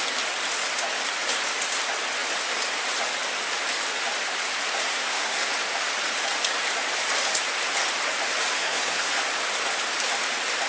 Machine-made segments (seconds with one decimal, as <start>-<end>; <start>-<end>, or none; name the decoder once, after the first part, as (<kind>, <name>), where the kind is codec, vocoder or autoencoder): 4.9-5.5 (codec, SNAC); 8.5-9.1